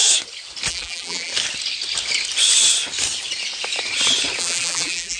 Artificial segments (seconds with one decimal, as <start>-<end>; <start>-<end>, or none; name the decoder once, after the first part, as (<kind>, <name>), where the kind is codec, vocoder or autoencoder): 0.7-1.3 (vocoder, BigVGAN v2); 4.4-5.2

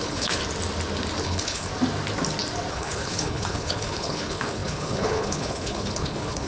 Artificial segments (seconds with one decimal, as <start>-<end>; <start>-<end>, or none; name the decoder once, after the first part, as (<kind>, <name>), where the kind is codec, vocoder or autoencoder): 0.0-0.4 (codec, HILCodec); 1.2-1.7; 2.7-6.5

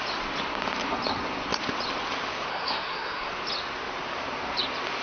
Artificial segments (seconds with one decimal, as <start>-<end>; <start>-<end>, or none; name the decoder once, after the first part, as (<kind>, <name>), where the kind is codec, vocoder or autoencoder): 2.5-3.3 (codec, SNAC)

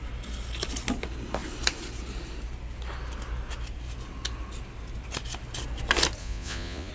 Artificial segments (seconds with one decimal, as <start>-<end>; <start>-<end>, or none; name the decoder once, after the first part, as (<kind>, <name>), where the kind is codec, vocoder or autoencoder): 6.2-6.9 (vocoder, Vocos)

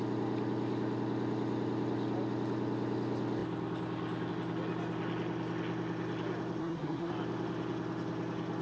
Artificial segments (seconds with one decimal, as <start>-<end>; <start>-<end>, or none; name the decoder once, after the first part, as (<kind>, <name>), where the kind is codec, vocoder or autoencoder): 6.6-7.1 (codec, SNAC)